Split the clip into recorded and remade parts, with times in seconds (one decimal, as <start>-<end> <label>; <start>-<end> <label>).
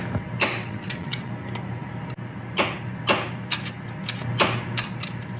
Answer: 0.0-0.6 recorded; 0.6-1.3 remade; 1.3-5.4 recorded